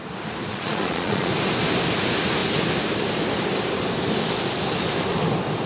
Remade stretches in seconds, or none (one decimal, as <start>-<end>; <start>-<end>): 0.5-1.3